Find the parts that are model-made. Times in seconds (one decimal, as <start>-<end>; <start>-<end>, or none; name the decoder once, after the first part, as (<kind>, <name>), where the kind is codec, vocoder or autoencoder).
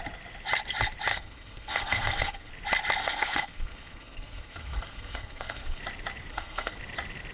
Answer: 1.1-2.5 (codec, SNAC); 3.0-5.8; 6.3-6.8